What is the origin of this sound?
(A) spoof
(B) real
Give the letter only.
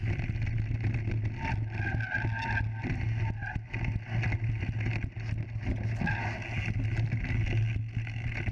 B